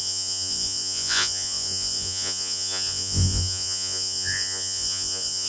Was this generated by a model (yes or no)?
yes